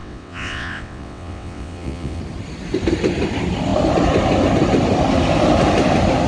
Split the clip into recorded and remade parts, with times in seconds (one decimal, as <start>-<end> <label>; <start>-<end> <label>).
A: 0.0-2.2 remade; 2.2-6.3 recorded